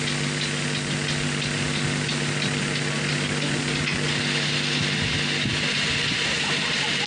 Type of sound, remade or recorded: recorded